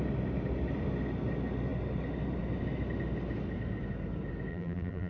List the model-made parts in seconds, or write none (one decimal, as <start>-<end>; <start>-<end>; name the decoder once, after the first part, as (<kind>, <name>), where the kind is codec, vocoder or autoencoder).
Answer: 4.5-5.1 (vocoder, BigVGAN v2)